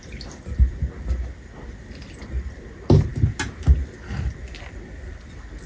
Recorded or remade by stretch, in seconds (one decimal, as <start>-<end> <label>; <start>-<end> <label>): 0.0-5.7 recorded